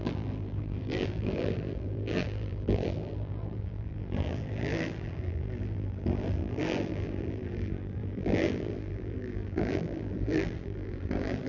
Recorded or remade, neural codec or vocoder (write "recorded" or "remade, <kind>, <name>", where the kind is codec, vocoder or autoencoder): remade, vocoder, BigVGAN v2